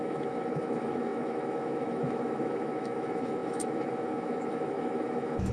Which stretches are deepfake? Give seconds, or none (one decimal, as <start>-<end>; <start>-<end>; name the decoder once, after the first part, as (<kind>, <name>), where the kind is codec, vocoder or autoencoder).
0.0-5.5 (autoencoder, DAC-VAE)